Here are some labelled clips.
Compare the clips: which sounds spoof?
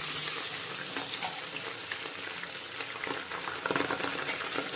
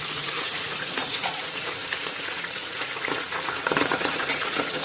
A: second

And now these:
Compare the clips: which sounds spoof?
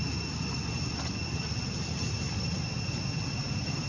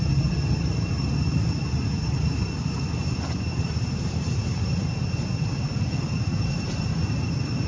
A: second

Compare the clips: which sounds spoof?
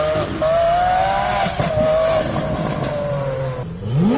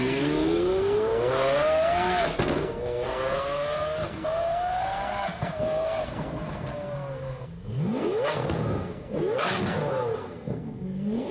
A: second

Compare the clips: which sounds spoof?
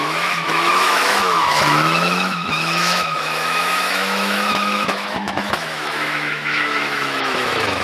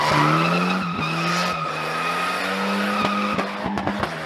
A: first